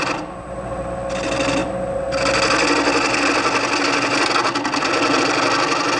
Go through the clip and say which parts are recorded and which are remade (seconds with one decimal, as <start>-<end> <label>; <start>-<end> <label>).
0.0-6.0 recorded

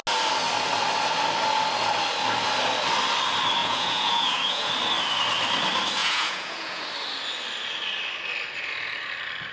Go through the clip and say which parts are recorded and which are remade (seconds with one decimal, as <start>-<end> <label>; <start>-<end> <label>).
0.0-3.6 recorded; 3.6-4.7 remade; 4.7-6.0 recorded; 6.0-6.8 remade; 6.8-9.5 recorded

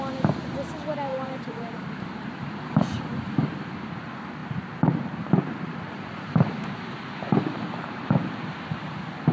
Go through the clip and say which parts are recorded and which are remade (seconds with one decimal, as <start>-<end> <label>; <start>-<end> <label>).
0.0-1.1 recorded; 1.1-3.8 remade; 3.8-4.4 recorded; 4.4-8.4 remade; 8.4-9.3 recorded

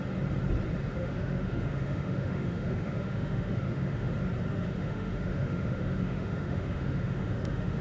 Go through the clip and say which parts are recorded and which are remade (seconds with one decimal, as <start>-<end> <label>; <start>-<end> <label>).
0.0-0.9 recorded; 0.9-4.1 remade; 4.1-4.5 recorded; 4.5-7.8 remade

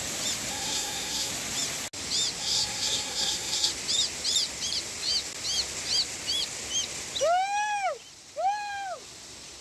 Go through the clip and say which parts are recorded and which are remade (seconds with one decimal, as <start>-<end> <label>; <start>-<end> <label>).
0.0-0.5 recorded; 0.5-1.3 remade; 1.3-2.4 recorded; 2.4-3.7 remade; 3.7-9.6 recorded

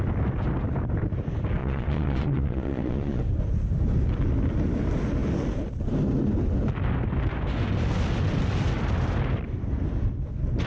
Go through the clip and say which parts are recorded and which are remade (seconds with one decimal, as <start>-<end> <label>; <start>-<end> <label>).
0.0-1.6 recorded; 1.6-3.2 remade; 3.2-10.7 recorded

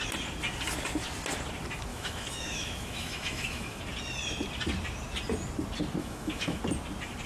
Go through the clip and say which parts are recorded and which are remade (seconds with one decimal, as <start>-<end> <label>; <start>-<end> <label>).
0.0-1.9 recorded; 1.9-3.8 remade; 3.8-6.0 recorded; 6.0-6.6 remade; 6.6-7.3 recorded